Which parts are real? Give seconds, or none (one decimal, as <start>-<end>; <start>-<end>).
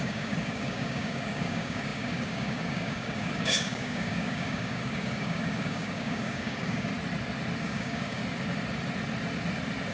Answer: 6.9-7.6; 8.2-9.9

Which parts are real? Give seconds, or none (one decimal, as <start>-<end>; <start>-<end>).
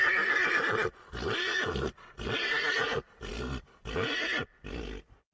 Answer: 0.0-5.3